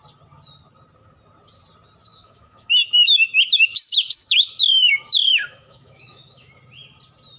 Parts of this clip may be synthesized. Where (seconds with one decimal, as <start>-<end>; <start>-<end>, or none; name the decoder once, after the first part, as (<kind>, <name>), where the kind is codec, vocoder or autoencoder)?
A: 2.1-6.5 (autoencoder, DAC-VAE)